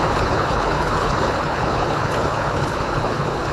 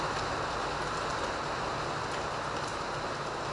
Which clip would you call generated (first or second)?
first